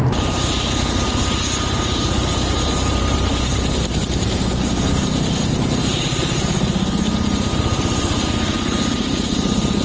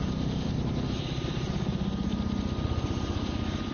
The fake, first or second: first